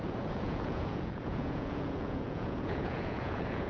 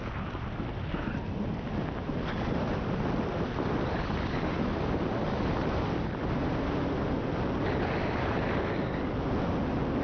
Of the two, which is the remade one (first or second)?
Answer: first